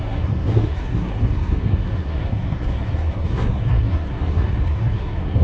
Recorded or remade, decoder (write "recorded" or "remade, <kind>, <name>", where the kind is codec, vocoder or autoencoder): remade, codec, SNAC